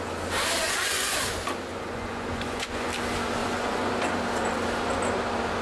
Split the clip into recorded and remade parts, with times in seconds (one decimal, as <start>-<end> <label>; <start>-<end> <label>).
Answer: 0.0-0.6 recorded; 0.6-1.2 remade; 1.2-1.7 recorded; 1.7-2.9 remade; 2.9-3.4 recorded; 3.4-3.9 remade; 3.9-5.6 recorded